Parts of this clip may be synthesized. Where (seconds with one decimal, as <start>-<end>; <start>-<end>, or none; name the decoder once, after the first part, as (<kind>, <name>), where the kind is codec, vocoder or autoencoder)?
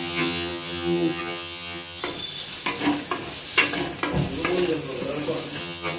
0.0-2.0 (vocoder, HiFi-GAN); 5.6-6.0